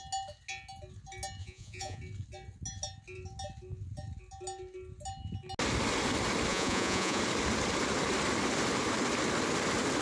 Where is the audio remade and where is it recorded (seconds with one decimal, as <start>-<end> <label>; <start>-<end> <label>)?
0.0-1.4 recorded; 1.4-2.0 remade; 2.0-6.5 recorded; 6.5-7.2 remade; 7.2-10.0 recorded